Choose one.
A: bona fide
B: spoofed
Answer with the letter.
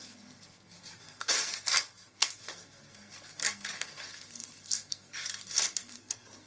B